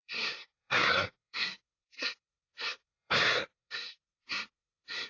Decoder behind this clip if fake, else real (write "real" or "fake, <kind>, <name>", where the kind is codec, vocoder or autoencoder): fake, codec, SNAC